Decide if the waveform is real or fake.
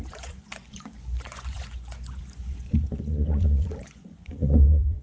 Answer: fake